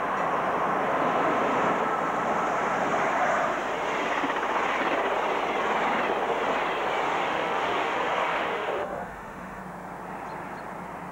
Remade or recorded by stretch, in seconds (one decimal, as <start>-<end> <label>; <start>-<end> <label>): 0.0-7.1 recorded; 7.1-9.6 remade; 9.6-11.1 recorded